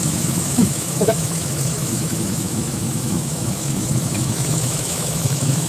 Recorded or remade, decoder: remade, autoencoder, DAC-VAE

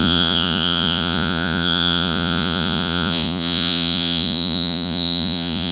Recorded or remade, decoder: remade, vocoder, Vocos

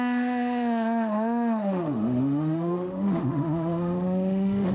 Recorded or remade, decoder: remade, autoencoder, DAC-VAE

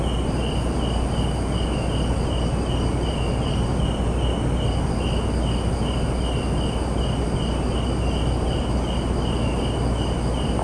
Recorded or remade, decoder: recorded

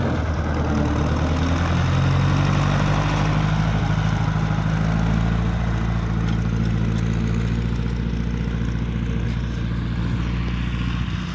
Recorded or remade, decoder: recorded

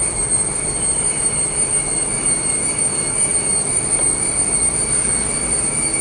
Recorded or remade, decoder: recorded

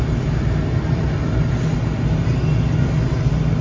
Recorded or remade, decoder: recorded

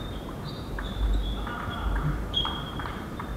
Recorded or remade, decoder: remade, vocoder, BigVGAN v2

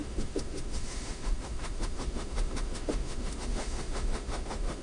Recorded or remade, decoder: remade, autoencoder, DAC-VAE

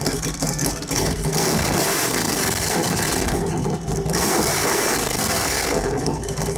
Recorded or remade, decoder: remade, codec, SNAC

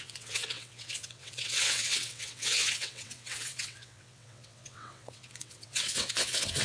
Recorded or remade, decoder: remade, vocoder, WaveNeXt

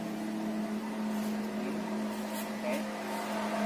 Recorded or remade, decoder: recorded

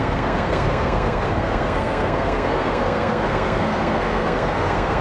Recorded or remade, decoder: remade, codec, SNAC